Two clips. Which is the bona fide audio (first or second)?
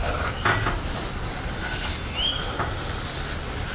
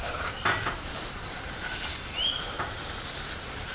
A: first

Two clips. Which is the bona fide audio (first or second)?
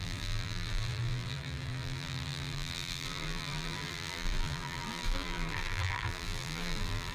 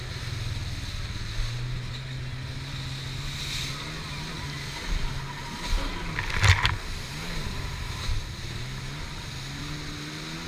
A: second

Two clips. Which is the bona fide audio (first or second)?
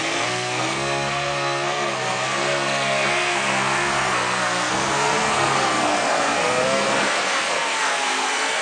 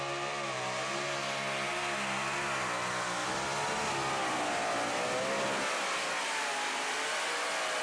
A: second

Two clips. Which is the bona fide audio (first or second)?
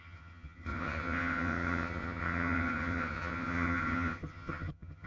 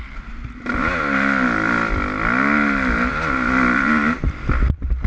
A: second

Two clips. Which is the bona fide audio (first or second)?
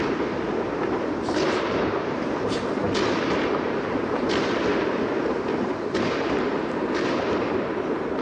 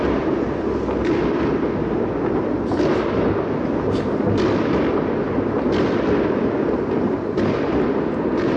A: second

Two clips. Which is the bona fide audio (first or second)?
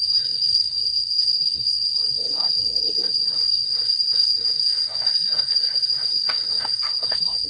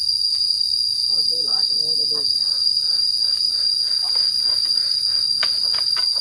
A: second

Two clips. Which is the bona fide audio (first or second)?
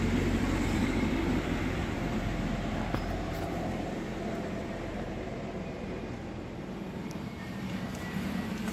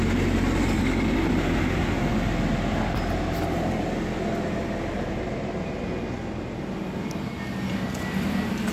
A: second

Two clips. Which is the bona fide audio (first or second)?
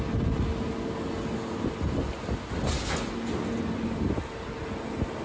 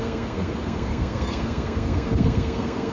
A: first